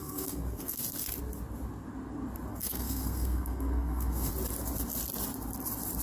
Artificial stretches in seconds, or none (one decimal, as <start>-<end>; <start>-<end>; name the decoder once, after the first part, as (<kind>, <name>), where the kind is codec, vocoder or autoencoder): 0.0-0.8 (codec, SNAC); 2.5-4.3